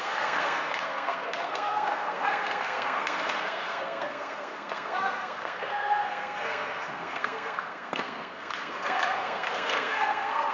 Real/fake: fake